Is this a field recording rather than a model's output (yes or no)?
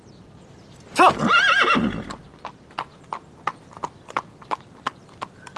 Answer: yes